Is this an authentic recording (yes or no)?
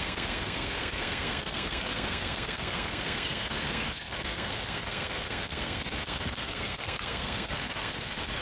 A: no